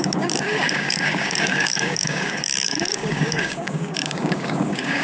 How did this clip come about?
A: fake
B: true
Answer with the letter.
A